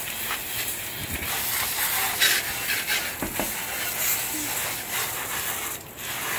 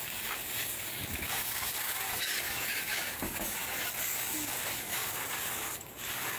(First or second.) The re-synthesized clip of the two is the second